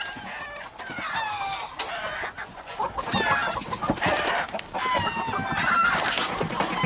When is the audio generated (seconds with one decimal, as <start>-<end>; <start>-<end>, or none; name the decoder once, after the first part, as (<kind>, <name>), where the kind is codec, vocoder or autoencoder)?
2.0-2.9 (vocoder, Vocos)